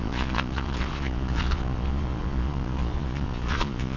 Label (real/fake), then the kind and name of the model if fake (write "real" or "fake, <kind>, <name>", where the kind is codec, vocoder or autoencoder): fake, vocoder, Vocos